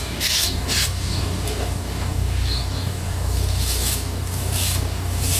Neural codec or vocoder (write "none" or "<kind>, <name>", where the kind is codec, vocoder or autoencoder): codec, DAC